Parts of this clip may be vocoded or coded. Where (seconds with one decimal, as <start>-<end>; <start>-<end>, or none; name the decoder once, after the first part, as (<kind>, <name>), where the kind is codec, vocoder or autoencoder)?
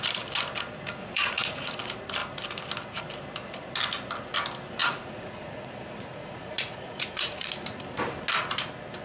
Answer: 1.0-1.7 (vocoder, Vocos); 4.8-7.5